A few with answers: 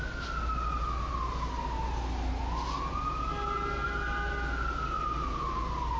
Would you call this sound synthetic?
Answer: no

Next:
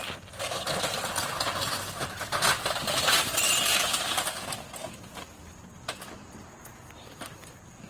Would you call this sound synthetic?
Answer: no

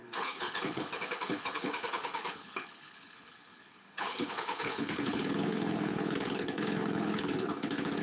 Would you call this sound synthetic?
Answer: yes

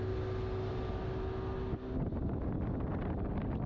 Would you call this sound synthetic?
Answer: no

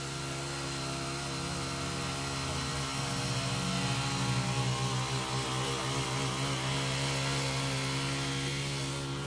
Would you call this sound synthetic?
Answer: no